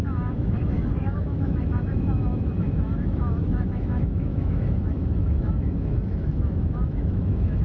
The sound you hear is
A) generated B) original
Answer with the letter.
A